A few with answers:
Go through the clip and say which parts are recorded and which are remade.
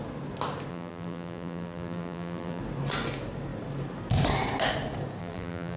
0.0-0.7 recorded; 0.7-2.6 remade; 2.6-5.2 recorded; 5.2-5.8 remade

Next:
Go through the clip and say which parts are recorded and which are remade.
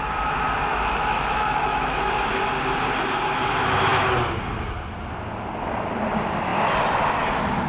0.0-0.7 recorded; 0.7-2.3 remade; 2.3-7.7 recorded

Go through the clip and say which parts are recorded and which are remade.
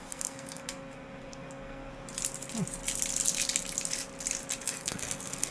0.0-1.9 remade; 1.9-4.6 recorded; 4.6-5.5 remade